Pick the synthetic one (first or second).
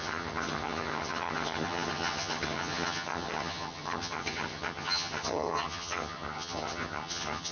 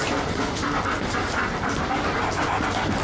first